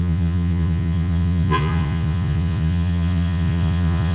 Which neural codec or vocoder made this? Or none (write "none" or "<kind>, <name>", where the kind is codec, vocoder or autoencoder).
vocoder, Vocos